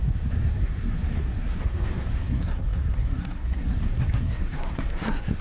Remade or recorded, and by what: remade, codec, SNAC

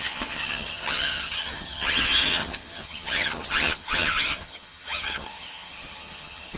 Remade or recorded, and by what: remade, vocoder, HiFi-GAN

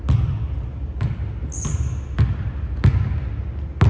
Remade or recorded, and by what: recorded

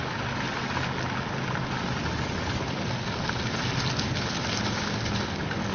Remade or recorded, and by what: recorded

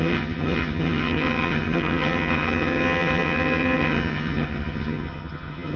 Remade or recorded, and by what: remade, vocoder, HiFi-GAN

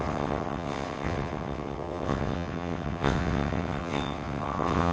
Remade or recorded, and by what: remade, vocoder, WaveNeXt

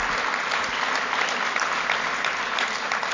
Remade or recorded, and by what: recorded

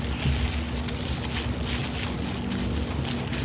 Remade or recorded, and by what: recorded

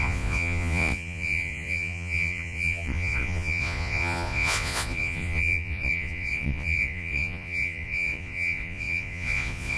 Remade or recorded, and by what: remade, vocoder, Vocos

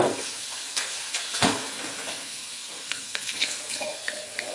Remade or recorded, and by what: remade, codec, SNAC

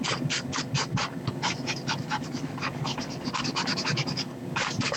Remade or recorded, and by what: remade, codec, DAC